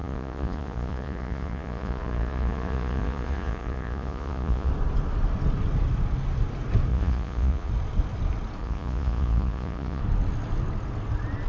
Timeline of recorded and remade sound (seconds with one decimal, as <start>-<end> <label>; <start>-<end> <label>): 0.0-4.7 remade; 4.7-6.9 recorded; 6.9-7.7 remade; 7.7-8.6 recorded; 8.6-10.0 remade; 10.0-11.5 recorded